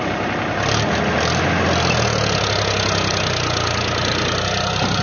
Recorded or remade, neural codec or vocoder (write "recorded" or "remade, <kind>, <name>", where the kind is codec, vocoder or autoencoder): recorded